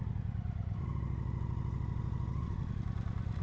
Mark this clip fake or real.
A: real